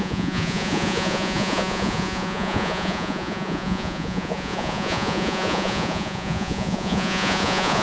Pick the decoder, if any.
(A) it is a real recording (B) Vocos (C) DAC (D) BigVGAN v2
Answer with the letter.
B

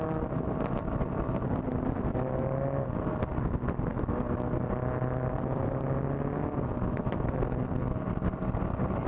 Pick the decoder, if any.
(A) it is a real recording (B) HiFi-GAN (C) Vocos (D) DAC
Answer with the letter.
A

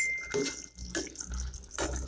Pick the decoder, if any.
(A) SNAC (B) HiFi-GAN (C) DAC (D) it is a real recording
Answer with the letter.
D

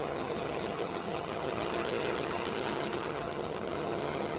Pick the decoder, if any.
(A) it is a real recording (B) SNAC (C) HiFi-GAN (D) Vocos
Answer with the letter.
C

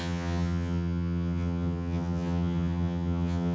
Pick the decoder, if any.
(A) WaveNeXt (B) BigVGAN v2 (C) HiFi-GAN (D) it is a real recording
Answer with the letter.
C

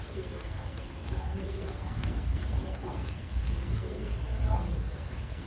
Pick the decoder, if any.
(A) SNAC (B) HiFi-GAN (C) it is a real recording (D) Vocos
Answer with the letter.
A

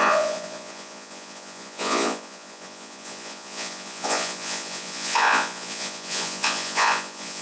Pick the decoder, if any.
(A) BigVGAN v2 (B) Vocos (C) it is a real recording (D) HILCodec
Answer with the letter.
B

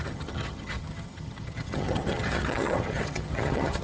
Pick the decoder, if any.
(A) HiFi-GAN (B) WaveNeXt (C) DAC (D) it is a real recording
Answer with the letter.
A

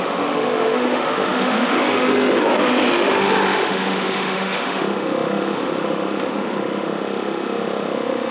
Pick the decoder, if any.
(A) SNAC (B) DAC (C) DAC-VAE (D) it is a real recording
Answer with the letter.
C